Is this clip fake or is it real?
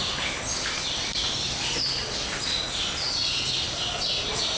real